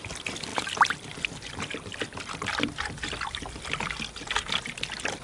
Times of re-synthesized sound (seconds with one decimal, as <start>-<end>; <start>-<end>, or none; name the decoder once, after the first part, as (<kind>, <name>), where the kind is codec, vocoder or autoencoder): none